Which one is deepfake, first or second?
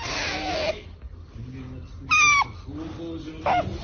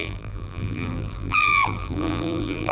second